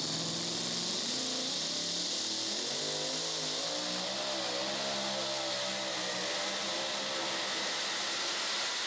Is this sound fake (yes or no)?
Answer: no